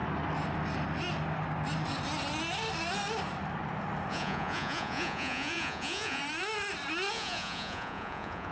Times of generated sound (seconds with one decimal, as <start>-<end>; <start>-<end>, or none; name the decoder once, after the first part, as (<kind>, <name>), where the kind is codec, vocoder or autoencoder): 4.1-6.2 (vocoder, Vocos); 7.1-8.5